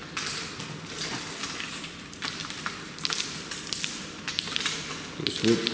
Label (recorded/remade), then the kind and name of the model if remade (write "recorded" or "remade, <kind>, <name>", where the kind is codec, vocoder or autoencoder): remade, vocoder, BigVGAN v2